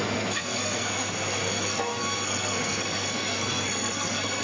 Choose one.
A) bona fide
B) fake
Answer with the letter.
B